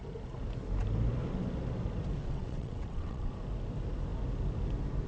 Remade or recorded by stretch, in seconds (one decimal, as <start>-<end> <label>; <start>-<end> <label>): 0.0-2.2 recorded; 2.2-3.3 remade; 3.3-5.1 recorded